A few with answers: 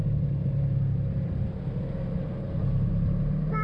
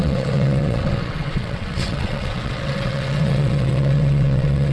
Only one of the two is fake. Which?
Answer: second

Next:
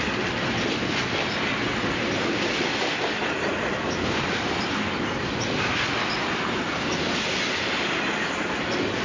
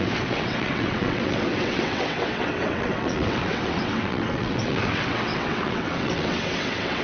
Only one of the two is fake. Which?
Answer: second